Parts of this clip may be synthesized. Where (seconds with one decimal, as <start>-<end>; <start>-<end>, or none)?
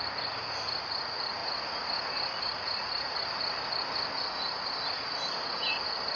none